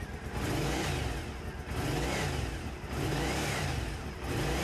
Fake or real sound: real